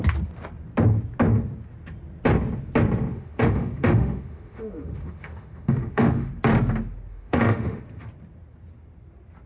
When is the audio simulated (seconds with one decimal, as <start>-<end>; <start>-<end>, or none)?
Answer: 3.1-6.3; 7.1-7.8